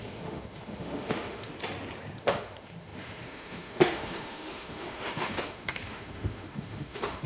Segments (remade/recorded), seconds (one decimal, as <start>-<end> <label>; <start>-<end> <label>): 0.0-1.5 remade; 1.5-2.2 recorded; 2.2-7.3 remade